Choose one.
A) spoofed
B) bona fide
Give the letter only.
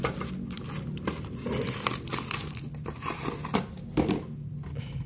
B